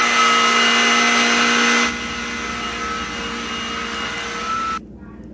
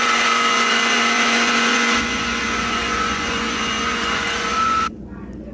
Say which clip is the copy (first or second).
second